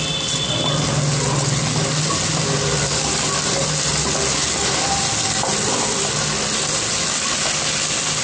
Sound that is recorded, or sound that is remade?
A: recorded